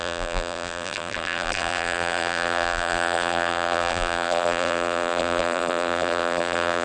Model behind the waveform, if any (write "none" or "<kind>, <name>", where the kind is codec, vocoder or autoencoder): vocoder, BigVGAN v2